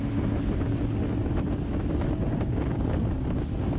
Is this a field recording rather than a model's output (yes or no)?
yes